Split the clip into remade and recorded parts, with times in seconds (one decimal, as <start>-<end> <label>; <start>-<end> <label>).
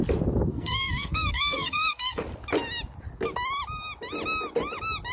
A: 0.0-0.5 recorded; 0.5-2.2 remade; 2.2-5.1 recorded